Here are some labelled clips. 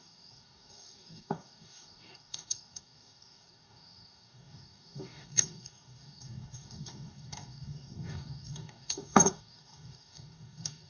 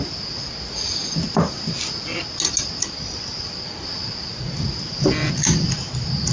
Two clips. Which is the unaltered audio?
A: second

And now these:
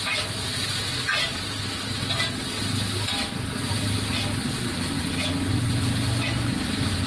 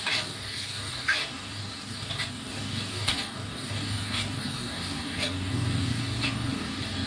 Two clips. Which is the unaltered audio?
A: first